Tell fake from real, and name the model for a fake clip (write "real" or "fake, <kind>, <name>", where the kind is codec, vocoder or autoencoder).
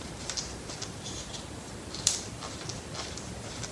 fake, vocoder, BigVGAN v2